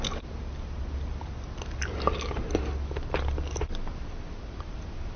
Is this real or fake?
real